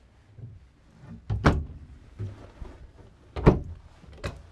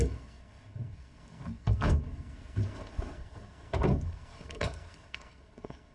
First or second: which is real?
first